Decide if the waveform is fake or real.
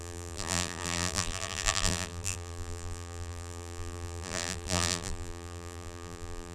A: fake